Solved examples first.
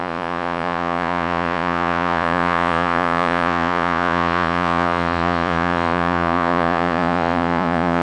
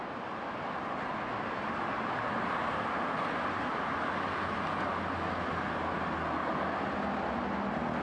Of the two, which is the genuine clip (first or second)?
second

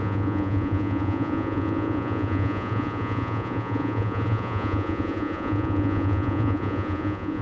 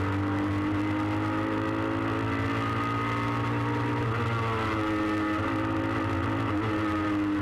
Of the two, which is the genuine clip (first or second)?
second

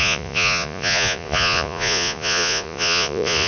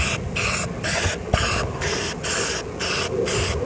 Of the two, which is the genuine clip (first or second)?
second